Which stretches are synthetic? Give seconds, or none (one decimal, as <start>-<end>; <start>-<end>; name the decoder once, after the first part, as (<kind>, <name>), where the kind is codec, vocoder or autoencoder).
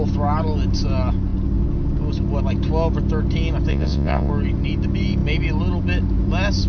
3.7-4.3 (vocoder, WaveNeXt)